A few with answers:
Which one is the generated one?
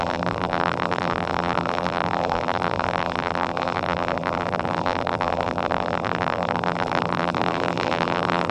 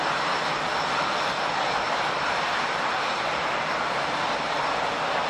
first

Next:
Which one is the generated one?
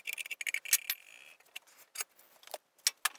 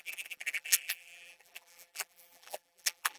second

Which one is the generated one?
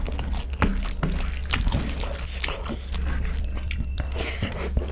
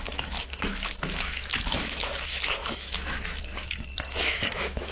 second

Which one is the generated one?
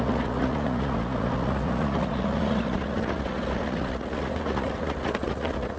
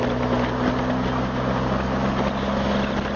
first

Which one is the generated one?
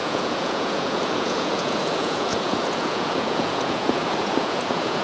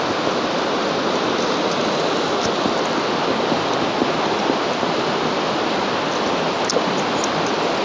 first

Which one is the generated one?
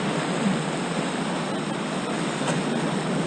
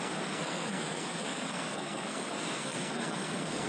second